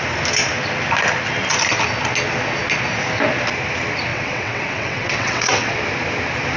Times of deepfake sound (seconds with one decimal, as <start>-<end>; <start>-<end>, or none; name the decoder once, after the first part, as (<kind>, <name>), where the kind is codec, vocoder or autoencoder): 4.1-5.8 (vocoder, WaveNeXt)